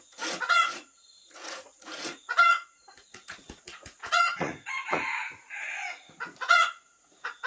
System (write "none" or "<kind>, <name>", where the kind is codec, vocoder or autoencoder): vocoder, Vocos